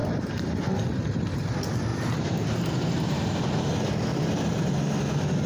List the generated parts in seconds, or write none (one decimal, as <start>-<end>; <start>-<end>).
1.9-3.4; 4.1-4.7